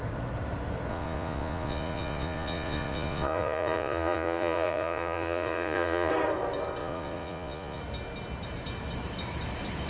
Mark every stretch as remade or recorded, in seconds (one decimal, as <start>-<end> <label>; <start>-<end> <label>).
0.0-0.9 recorded; 0.9-6.1 remade; 6.1-6.8 recorded; 6.8-7.8 remade; 7.8-9.9 recorded